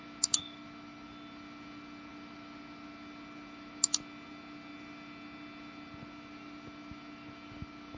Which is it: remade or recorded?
recorded